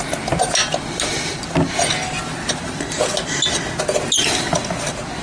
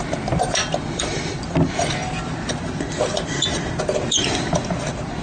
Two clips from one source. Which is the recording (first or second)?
first